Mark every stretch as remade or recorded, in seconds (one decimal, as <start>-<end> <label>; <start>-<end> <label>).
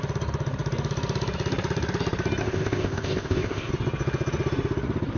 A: 0.0-2.4 recorded; 2.4-3.7 remade; 3.7-5.2 recorded